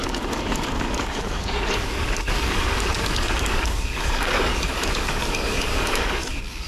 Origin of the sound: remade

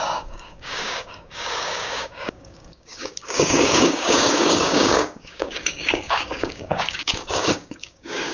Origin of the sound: remade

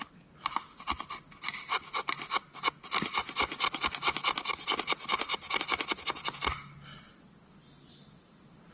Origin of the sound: recorded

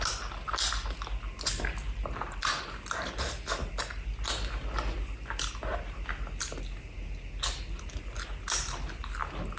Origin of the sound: recorded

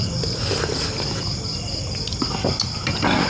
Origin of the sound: recorded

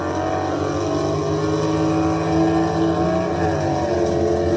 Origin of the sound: recorded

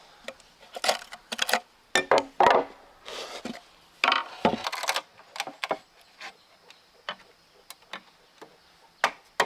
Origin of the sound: recorded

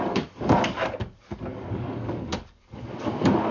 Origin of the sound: remade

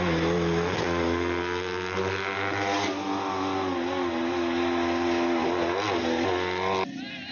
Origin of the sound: recorded